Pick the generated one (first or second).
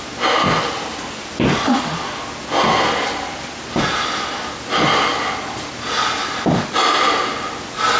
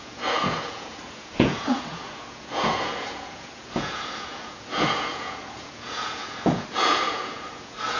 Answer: second